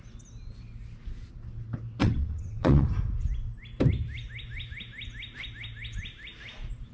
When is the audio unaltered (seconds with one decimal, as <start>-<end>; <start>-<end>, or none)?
0.0-2.0; 2.9-6.9

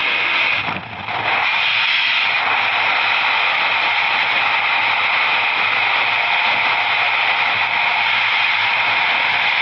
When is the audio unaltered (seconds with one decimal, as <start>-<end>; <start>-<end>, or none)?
0.0-9.6